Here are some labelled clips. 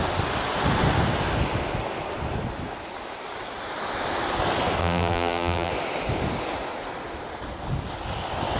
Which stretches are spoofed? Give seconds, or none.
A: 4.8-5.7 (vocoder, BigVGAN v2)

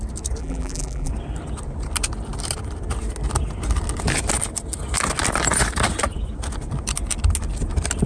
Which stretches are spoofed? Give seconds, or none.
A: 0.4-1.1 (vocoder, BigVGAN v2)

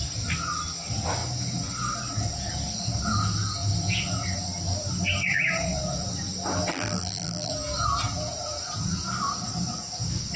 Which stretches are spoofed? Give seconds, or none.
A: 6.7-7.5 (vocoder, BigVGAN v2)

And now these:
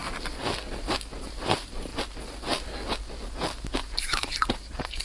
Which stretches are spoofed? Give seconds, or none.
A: 1.4-1.9 (vocoder, BigVGAN v2); 4.0-5.0